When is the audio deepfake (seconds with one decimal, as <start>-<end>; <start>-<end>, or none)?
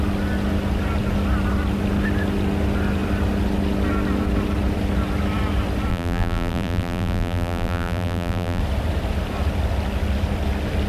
5.9-8.6